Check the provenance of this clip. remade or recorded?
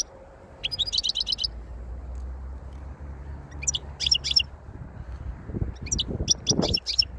recorded